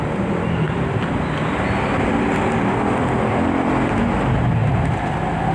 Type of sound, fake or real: real